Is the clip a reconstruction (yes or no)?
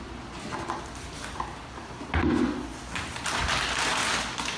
no